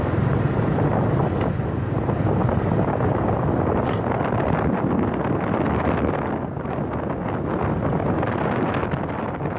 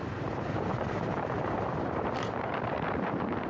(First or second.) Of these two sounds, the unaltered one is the first